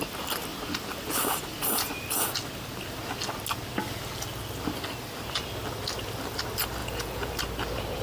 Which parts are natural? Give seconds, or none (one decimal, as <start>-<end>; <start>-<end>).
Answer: 0.0-6.8; 7.3-8.0